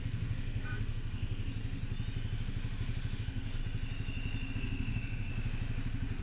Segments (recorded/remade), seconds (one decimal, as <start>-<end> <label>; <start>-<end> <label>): 0.0-1.8 remade; 1.8-3.2 recorded; 3.2-3.6 remade; 3.6-4.5 recorded; 4.5-5.3 remade; 5.3-6.2 recorded